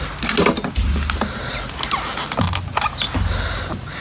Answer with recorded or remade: recorded